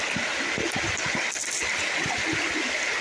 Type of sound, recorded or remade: recorded